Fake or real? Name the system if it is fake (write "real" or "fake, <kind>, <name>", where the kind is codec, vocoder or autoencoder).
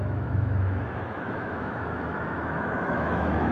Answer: fake, autoencoder, DAC-VAE